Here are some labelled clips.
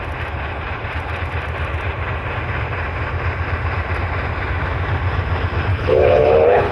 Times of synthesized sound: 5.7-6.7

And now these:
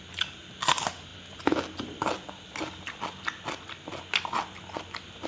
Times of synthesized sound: none

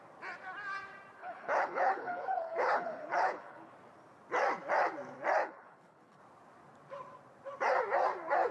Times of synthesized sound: 1.2-3.7; 5.4-6.2

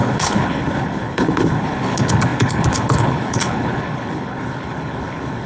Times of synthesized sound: 0.0-5.5